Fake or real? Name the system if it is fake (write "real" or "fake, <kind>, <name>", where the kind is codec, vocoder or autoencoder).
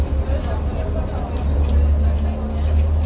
real